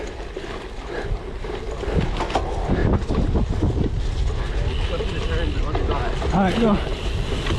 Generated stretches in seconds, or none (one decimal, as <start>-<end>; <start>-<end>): none